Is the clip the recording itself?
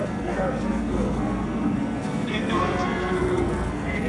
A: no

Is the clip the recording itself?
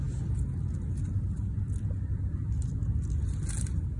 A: yes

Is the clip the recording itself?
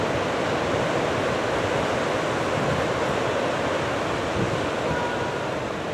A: yes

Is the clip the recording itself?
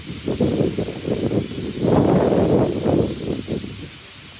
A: yes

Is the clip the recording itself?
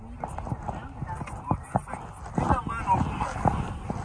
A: yes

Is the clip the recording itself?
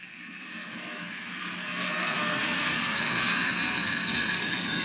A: no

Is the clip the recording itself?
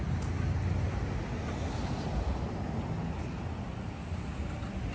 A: yes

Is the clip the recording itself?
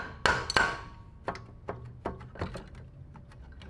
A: yes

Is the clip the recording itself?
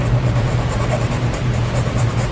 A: yes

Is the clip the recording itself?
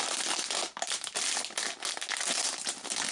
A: yes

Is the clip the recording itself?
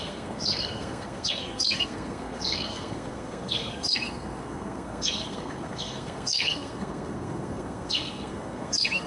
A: no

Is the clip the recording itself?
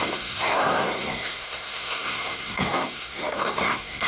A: no